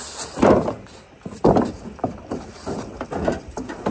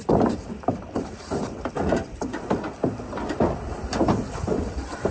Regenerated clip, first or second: second